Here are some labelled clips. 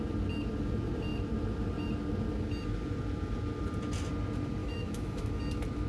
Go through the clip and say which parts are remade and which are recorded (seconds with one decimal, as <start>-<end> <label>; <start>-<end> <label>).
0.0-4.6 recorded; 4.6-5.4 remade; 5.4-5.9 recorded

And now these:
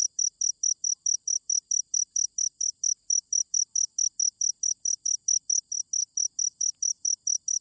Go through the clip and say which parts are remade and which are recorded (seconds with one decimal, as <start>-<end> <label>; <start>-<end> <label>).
0.0-7.6 recorded

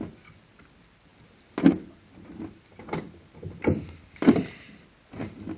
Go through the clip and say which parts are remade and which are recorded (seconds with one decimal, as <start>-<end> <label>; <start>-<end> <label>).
0.0-5.6 recorded